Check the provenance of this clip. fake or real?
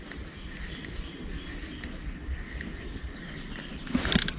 real